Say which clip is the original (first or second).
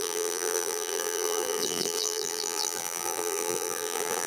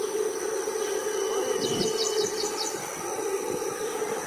second